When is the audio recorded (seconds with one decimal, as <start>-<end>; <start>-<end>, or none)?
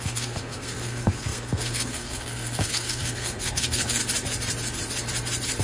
4.0-5.6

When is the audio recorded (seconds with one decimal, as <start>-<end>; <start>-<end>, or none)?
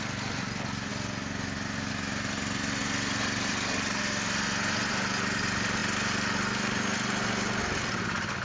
0.0-8.4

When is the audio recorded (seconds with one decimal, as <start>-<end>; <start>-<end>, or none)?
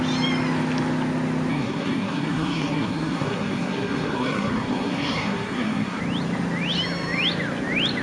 0.0-1.5; 6.0-8.0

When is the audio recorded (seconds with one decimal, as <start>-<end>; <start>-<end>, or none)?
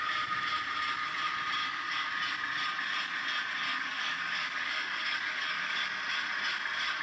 0.0-1.6; 2.1-3.7; 5.8-7.0